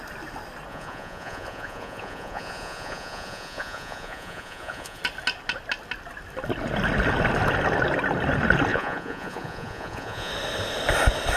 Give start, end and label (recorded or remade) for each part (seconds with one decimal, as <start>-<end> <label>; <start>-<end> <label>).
0.0-0.7 recorded; 0.7-5.0 remade; 5.0-8.7 recorded; 8.7-10.3 remade; 10.3-11.4 recorded